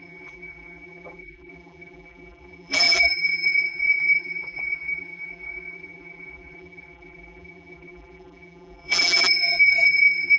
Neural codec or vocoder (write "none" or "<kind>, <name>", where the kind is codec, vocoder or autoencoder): vocoder, BigVGAN v2